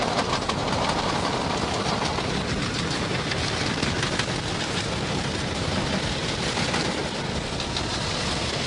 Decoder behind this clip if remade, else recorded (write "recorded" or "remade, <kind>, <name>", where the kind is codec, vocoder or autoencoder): recorded